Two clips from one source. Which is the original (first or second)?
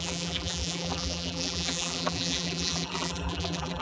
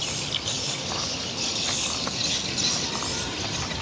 second